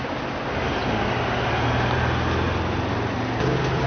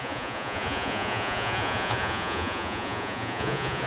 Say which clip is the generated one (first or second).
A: second